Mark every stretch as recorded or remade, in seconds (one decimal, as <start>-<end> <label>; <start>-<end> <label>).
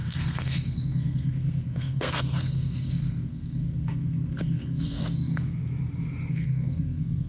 0.0-5.6 remade; 5.6-6.3 recorded; 6.3-7.3 remade